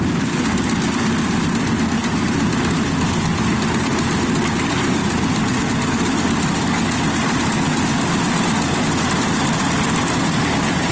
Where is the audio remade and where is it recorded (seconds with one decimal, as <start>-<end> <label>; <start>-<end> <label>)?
0.0-10.9 recorded